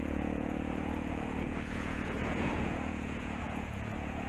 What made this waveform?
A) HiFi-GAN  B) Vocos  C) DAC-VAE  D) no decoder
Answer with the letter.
B